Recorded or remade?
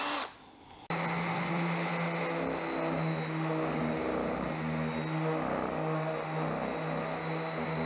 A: recorded